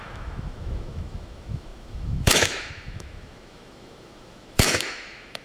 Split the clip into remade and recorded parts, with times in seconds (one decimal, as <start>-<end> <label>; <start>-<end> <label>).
0.0-5.4 remade